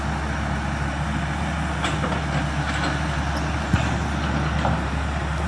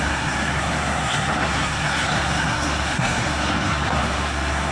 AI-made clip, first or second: second